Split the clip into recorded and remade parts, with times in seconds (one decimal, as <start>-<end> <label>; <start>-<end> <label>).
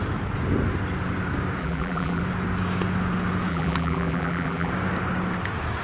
0.0-1.6 recorded; 1.6-2.2 remade; 2.2-3.5 recorded; 3.5-4.7 remade; 4.7-5.8 recorded